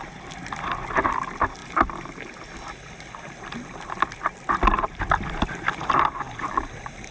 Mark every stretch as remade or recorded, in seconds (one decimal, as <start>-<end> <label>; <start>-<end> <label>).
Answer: 0.0-7.1 recorded